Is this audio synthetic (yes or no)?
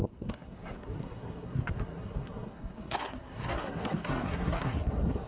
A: yes